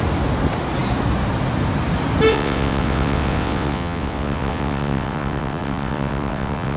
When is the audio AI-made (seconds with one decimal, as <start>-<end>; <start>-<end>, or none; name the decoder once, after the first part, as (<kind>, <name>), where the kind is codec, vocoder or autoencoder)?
2.3-6.8 (vocoder, WaveNeXt)